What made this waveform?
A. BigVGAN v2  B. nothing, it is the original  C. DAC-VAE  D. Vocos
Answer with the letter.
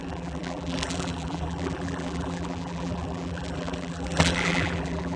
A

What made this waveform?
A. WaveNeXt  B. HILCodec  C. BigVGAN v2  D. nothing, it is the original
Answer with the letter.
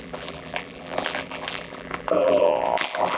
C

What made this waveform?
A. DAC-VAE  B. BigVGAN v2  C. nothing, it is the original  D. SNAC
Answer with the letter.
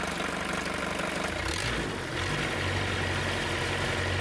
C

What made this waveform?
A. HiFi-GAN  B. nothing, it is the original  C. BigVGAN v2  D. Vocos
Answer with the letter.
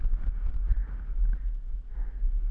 B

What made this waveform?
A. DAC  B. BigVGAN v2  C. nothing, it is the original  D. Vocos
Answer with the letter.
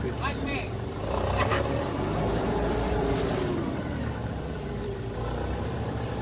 B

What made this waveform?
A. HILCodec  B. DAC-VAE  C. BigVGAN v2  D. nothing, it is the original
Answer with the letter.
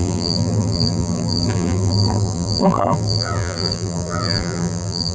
C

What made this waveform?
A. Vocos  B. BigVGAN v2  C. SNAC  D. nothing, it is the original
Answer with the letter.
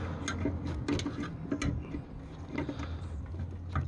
D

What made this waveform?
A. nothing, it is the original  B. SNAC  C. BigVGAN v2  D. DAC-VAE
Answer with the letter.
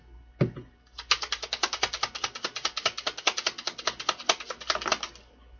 A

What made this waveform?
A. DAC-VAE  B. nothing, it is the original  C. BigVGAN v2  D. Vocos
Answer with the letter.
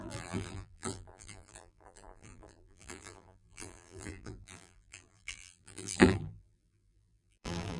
C